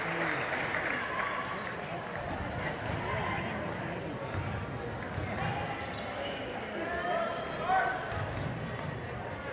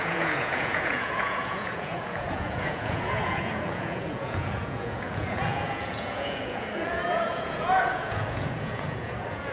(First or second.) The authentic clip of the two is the first